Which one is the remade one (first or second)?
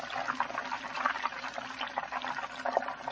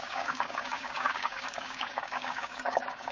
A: second